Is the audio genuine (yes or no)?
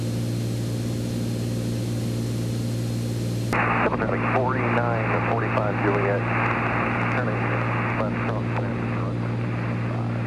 yes